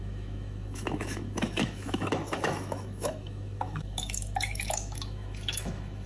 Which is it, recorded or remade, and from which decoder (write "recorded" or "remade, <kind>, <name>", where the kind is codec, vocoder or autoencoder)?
remade, autoencoder, DAC-VAE